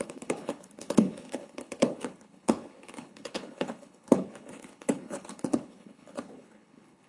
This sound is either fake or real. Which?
fake